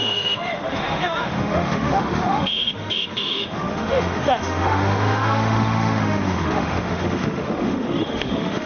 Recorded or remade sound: remade